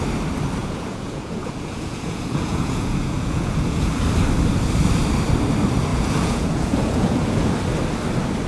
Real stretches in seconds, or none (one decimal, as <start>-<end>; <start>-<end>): 0.0-0.6; 3.9-5.9; 7.5-8.5